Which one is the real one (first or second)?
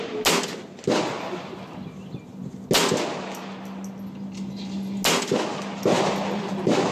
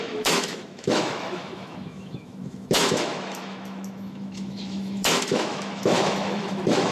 first